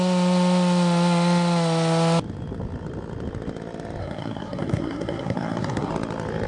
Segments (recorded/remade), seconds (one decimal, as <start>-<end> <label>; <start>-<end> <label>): 0.0-4.0 recorded; 4.0-5.9 remade; 5.9-6.5 recorded

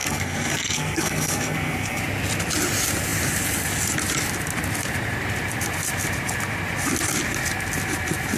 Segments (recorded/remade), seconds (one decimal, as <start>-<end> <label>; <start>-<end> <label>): 0.0-2.0 remade; 2.0-8.4 recorded

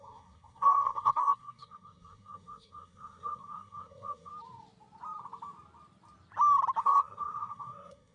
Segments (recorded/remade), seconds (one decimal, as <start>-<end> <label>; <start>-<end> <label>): 0.0-4.3 remade; 4.3-6.8 recorded; 6.8-8.1 remade

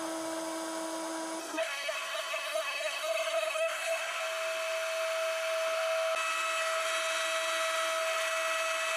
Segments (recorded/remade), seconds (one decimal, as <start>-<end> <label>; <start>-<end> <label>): 0.0-1.4 recorded; 1.4-4.2 remade; 4.2-9.0 recorded

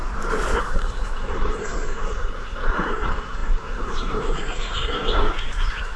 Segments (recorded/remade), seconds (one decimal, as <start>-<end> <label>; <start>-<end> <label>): 0.0-0.6 recorded; 0.6-6.0 remade

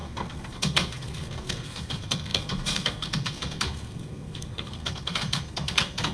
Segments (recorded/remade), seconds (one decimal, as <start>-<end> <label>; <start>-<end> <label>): 0.0-6.1 remade

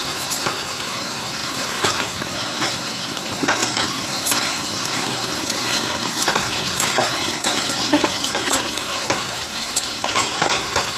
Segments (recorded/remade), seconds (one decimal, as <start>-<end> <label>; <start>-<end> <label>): 0.0-11.0 remade